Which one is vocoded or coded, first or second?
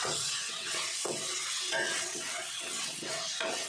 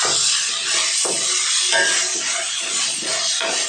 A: first